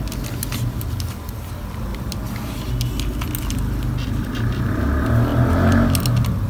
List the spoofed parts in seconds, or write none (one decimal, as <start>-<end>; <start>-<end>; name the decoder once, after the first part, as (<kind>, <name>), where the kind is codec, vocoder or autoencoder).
none